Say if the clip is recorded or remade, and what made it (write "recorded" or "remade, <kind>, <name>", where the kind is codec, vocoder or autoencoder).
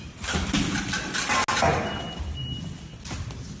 recorded